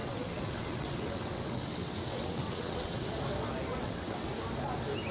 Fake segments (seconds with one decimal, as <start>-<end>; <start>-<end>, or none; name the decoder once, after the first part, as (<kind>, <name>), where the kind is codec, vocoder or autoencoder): 0.0-3.1 (vocoder, WaveNeXt); 3.7-4.3